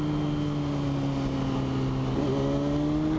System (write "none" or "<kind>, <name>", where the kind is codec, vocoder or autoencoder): none